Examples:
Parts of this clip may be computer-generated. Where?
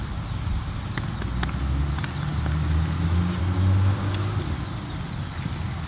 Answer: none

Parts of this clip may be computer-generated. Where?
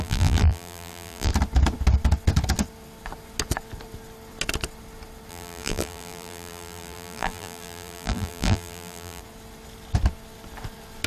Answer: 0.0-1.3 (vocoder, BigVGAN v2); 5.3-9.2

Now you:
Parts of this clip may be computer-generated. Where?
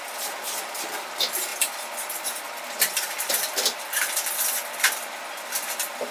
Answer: none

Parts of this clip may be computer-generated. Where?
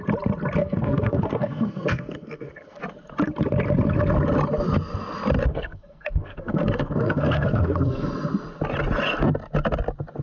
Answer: 0.6-2.8 (codec, SNAC); 5.5-8.1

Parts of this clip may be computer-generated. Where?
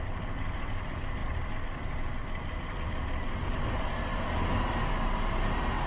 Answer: none